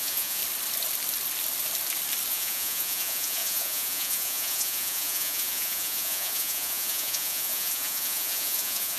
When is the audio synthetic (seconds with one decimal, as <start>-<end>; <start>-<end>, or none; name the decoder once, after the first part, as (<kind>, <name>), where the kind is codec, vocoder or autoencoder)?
0.0-0.4 (vocoder, Vocos); 2.3-9.0